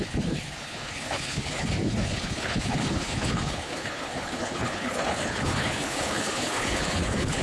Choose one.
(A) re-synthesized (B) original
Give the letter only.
A